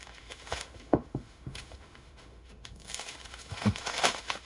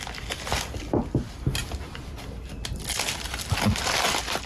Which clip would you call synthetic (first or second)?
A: first